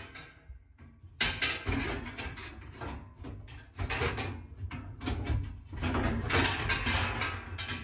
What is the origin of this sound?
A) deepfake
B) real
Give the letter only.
B